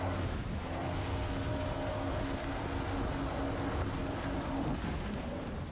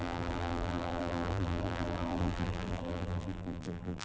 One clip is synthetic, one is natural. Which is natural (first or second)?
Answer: first